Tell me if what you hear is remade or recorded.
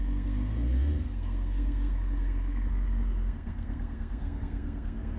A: remade